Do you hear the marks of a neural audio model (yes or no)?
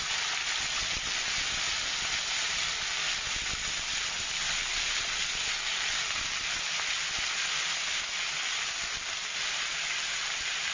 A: no